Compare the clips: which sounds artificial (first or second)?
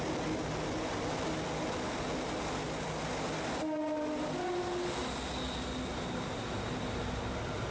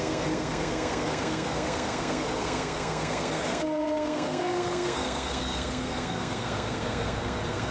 second